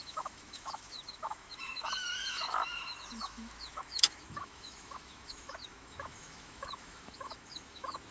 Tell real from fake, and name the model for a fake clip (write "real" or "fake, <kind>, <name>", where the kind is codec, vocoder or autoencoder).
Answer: fake, autoencoder, DAC-VAE